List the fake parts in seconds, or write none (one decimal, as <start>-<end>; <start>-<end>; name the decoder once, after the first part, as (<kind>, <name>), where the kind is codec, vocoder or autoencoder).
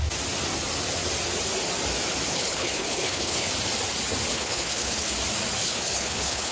2.3-3.5 (codec, HILCodec); 4.3-5.1; 5.6-6.5